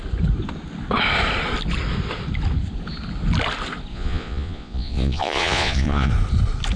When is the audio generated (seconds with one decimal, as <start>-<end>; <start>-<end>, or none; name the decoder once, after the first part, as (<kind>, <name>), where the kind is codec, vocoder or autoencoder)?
3.9-6.1 (vocoder, Vocos)

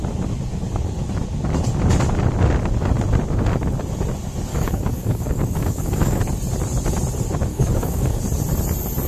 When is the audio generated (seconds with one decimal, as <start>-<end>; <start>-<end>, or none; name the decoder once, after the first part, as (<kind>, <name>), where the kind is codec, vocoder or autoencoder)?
4.5-6.2 (codec, DAC); 7.5-8.2

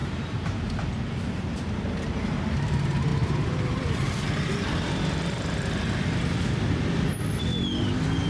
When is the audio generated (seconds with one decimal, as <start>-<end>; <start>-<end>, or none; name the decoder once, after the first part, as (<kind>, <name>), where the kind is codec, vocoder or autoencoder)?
0.0-0.7 (vocoder, BigVGAN v2); 3.1-4.5

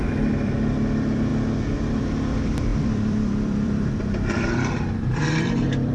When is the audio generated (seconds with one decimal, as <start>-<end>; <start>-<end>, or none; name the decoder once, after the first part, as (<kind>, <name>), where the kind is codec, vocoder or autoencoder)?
0.0-1.3 (vocoder, BigVGAN v2); 1.9-5.9

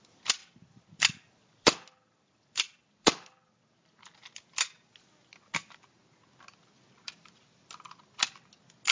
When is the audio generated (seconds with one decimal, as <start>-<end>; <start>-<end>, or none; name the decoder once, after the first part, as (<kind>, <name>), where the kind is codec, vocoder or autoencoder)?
0.4-3.5 (vocoder, BigVGAN v2)